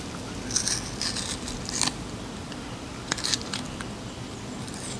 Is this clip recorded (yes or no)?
no